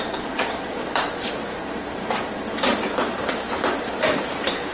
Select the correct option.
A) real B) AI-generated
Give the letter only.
B